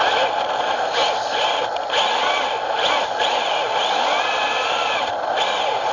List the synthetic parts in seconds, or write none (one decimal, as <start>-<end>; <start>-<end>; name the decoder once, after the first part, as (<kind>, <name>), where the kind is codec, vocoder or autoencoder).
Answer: none